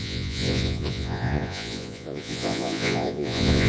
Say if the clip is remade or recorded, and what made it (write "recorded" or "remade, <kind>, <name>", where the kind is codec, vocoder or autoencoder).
remade, vocoder, Vocos